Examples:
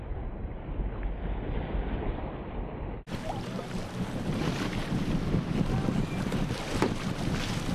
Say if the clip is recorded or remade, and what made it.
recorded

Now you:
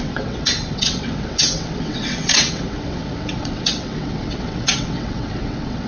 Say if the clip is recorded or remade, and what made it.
remade, vocoder, WaveNeXt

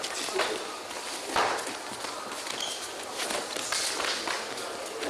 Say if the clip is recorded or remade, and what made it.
recorded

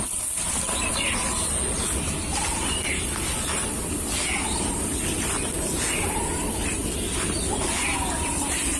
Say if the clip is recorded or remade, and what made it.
recorded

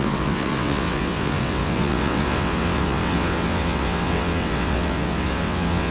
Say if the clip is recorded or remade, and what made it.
remade, vocoder, WaveNeXt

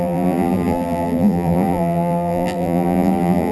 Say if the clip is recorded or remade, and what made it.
remade, vocoder, BigVGAN v2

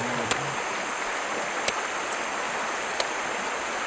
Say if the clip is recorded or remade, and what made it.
recorded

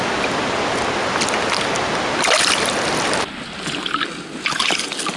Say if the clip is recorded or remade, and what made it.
recorded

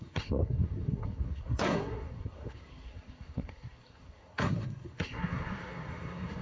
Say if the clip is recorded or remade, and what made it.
remade, codec, SNAC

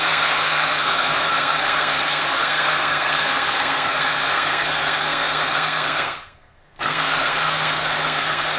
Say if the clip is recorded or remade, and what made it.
remade, codec, SNAC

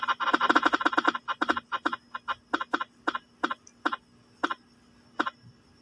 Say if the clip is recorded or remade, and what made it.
recorded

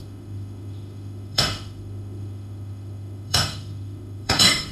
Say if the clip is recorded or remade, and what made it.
remade, autoencoder, DAC-VAE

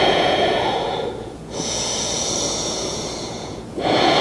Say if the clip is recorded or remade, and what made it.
remade, vocoder, Vocos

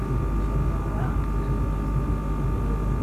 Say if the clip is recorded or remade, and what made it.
recorded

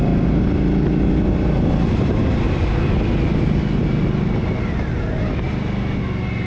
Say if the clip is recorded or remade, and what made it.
recorded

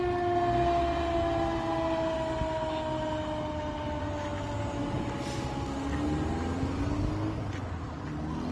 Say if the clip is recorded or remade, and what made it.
recorded